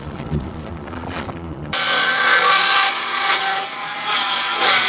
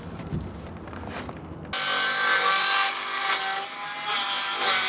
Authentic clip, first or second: second